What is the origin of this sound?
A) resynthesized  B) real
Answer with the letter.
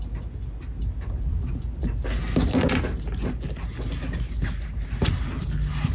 B